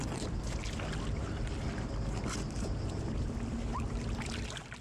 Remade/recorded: recorded